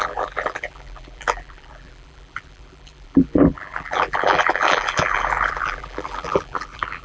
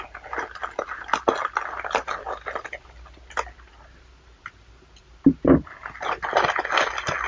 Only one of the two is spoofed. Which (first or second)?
first